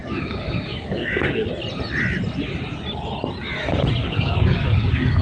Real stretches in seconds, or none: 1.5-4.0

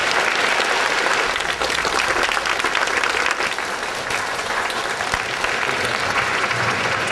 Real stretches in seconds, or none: 0.0-4.3; 4.8-6.1

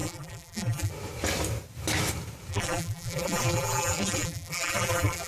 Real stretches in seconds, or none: 0.9-2.5

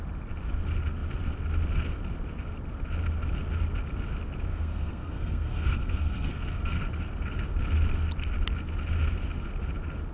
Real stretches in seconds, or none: 0.0-4.5; 6.8-10.1

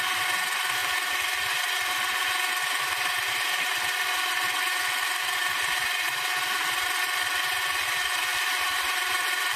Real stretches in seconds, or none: 0.0-8.3

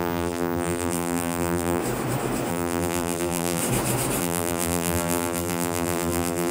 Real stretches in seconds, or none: 1.8-2.5; 3.6-4.2

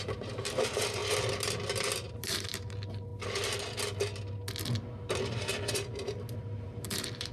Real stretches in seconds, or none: 1.0-2.1; 3.1-5.3

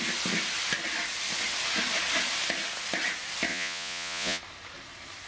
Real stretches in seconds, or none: 0.0-3.5; 4.4-5.3